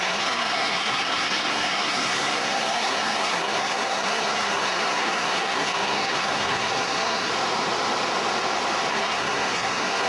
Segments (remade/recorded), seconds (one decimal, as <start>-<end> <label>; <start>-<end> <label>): 0.0-7.3 remade; 7.3-8.9 recorded; 8.9-10.1 remade